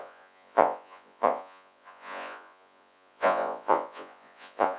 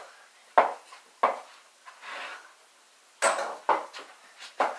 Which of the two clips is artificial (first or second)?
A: first